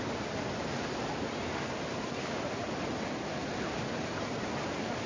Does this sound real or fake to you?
real